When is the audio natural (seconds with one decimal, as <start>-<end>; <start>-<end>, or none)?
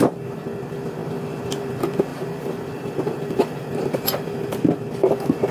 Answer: 0.0-2.1; 4.6-5.5